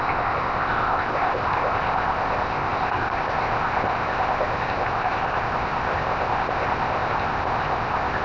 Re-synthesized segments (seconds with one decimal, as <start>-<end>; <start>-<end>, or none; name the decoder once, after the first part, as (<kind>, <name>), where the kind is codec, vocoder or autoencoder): 0.0-8.2 (codec, ZipCodec)

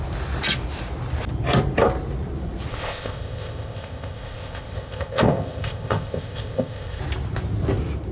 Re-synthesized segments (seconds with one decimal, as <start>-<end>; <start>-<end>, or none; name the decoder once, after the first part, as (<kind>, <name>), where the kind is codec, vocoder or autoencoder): 2.7-7.0 (codec, ZipCodec)

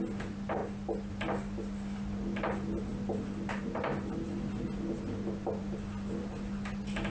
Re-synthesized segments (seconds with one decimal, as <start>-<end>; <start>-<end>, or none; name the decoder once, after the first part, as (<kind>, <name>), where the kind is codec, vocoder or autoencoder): none

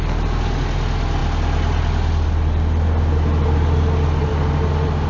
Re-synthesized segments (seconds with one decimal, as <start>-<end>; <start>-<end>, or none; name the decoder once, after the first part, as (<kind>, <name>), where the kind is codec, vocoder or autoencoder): none

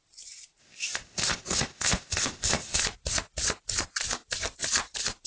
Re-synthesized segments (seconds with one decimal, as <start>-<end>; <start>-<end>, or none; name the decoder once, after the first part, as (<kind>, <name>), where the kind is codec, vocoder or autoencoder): 0.6-2.8 (codec, ZipCodec)

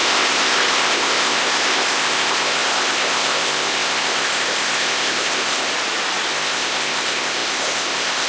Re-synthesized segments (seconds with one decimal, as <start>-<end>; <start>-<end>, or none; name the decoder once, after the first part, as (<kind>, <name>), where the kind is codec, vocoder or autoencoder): 0.0-5.7 (codec, ZipCodec); 6.3-8.3

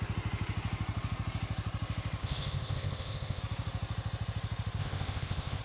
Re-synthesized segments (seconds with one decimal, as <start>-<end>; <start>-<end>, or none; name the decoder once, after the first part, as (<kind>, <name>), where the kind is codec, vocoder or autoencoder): 2.2-3.4 (codec, ZipCodec); 4.8-5.6

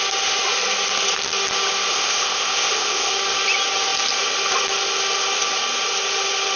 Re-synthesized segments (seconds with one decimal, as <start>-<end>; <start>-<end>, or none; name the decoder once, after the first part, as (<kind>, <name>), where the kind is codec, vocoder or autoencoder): 1.9-3.1 (codec, ZipCodec)